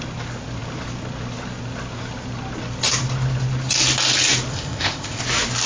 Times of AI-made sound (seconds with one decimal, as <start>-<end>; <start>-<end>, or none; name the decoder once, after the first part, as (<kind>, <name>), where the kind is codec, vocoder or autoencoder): 4.5-5.2 (codec, ZipCodec)